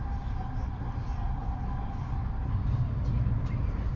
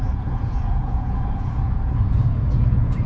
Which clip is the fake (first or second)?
second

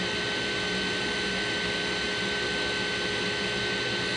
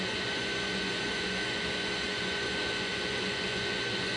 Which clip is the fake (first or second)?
second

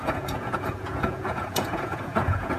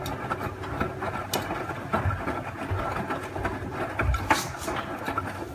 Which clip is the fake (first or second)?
first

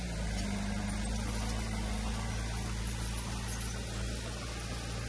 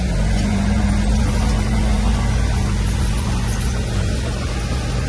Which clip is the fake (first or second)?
second